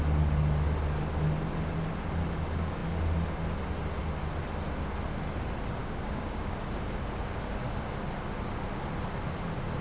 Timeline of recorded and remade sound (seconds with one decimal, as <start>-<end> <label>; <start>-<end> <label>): 0.0-5.8 recorded; 5.8-6.6 remade; 6.6-9.8 recorded